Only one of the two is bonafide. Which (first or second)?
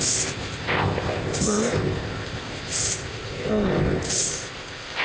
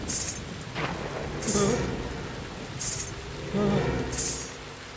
second